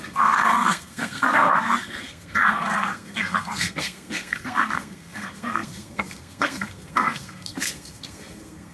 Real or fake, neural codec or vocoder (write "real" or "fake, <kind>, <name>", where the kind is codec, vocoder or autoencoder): fake, codec, SNAC